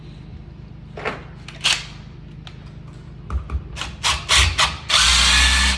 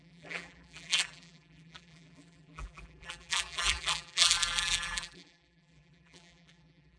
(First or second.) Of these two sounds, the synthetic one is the second